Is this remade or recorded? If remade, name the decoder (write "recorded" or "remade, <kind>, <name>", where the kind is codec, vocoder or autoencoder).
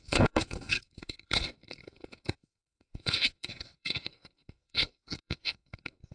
remade, codec, SNAC